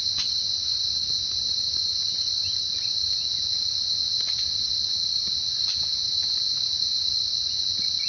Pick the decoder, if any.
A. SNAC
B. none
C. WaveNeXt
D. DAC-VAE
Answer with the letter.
B